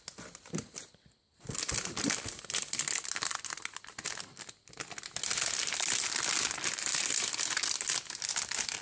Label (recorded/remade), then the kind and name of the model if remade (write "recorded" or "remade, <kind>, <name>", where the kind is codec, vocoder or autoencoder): recorded